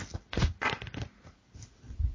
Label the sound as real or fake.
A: fake